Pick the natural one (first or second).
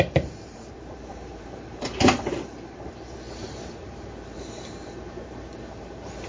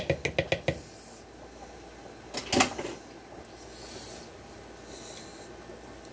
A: second